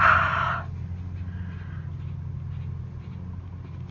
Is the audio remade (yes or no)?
no